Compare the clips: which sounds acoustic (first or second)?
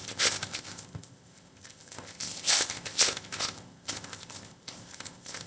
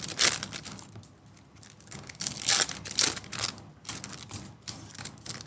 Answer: second